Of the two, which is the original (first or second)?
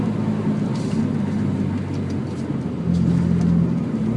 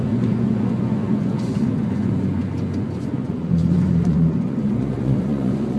first